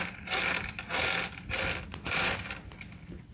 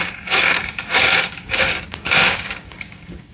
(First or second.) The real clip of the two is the first